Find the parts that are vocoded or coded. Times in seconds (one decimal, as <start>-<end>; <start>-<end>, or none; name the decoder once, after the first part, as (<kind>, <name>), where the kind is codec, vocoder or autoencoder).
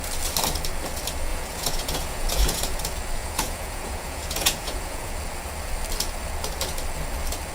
1.3-2.8 (vocoder, Vocos); 3.2-5.1